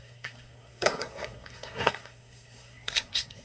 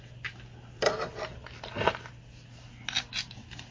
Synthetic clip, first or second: first